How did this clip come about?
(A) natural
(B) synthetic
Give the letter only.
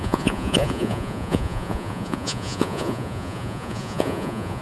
B